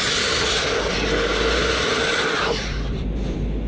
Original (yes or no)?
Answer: yes